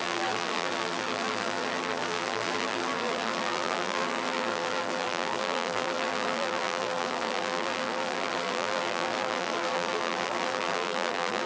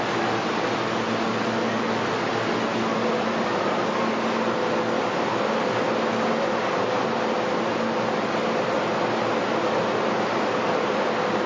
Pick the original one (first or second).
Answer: second